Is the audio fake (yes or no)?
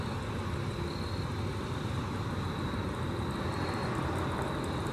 no